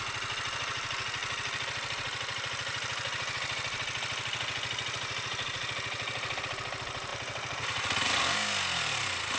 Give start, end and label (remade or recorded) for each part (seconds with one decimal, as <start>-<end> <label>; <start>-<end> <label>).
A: 0.0-7.1 recorded; 7.1-8.2 remade; 8.2-9.4 recorded